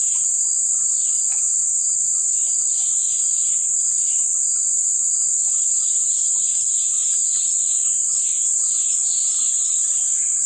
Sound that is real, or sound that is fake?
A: fake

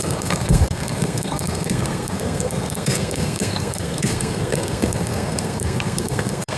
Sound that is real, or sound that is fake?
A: fake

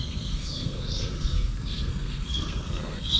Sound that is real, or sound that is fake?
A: fake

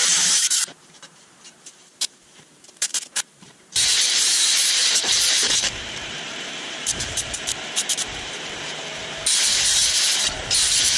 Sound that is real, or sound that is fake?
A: fake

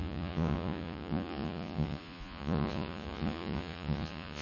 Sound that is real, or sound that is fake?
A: fake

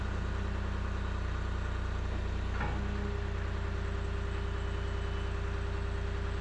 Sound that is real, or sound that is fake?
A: real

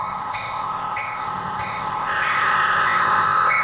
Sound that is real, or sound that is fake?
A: fake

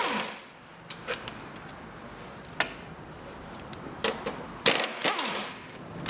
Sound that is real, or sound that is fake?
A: real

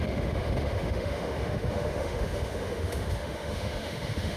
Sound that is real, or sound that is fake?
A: fake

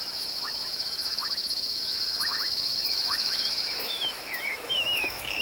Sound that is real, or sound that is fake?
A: fake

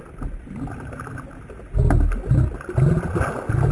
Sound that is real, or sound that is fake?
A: real